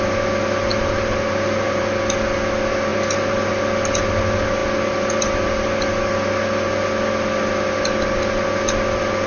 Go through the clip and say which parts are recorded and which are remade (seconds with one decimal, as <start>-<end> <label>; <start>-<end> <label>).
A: 0.0-0.7 recorded; 0.7-1.8 remade; 1.8-2.9 recorded; 2.9-3.5 remade; 3.5-9.3 recorded